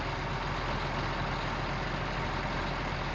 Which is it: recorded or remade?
recorded